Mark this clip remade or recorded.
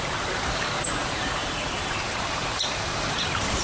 remade